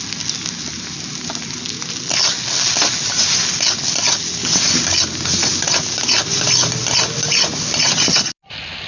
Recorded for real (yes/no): yes